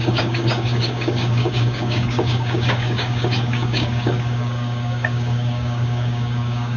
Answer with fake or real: fake